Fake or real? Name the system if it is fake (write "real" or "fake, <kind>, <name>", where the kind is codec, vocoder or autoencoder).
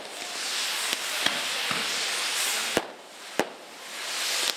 real